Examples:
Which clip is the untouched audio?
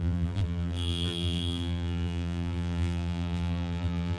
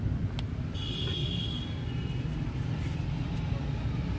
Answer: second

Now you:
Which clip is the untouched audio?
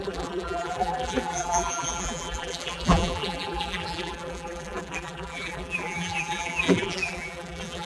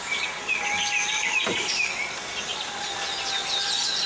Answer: second